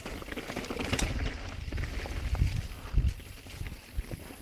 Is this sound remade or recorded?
recorded